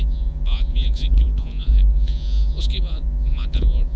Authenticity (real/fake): fake